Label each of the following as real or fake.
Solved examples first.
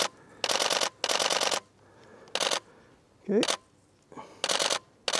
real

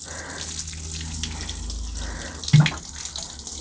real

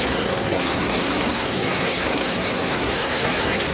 fake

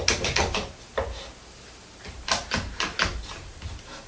real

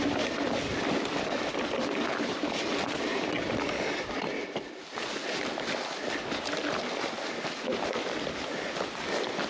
real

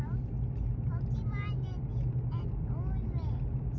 real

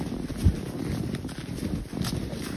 real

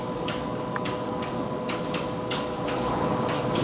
fake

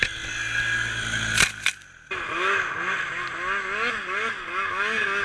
real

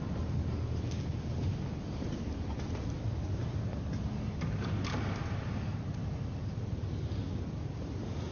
real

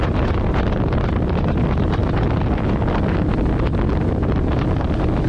real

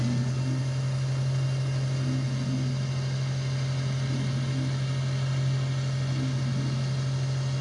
real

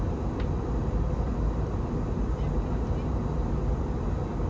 real